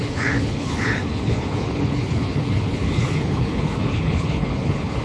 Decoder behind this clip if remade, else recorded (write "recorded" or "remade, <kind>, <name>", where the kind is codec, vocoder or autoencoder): remade, codec, HILCodec